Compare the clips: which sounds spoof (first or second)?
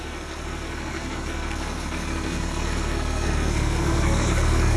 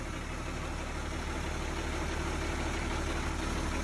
first